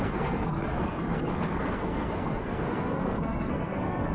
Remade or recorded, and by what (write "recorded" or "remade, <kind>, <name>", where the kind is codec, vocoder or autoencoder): remade, codec, SNAC